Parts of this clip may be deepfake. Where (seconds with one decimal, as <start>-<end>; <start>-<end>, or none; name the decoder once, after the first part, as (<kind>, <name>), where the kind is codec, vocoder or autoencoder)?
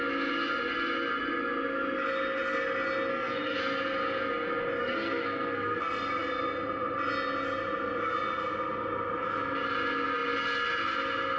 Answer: 3.1-3.6 (codec, SNAC); 4.8-5.8